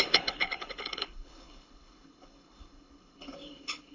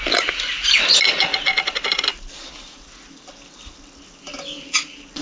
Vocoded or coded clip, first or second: first